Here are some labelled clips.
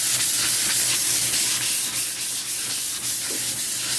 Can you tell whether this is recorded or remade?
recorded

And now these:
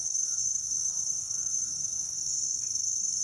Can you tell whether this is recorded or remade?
remade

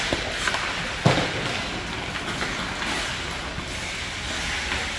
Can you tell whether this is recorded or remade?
recorded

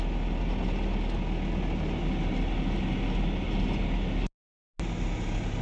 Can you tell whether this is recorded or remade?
recorded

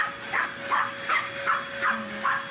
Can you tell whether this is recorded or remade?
recorded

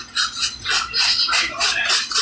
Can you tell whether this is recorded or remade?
recorded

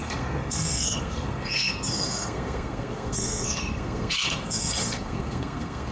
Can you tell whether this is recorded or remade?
remade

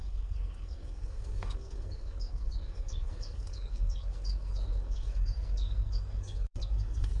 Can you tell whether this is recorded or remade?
remade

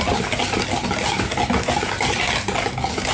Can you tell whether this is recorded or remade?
recorded